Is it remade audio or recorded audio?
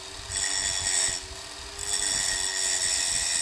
recorded